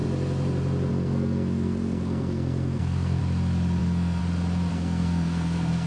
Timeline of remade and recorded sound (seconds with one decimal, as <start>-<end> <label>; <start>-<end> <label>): 0.0-0.9 recorded; 0.9-3.2 remade; 3.2-3.8 recorded; 3.8-4.2 remade; 4.2-4.7 recorded; 4.7-5.9 remade